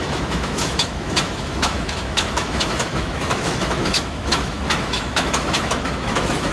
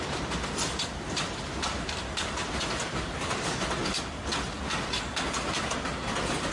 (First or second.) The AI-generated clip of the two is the first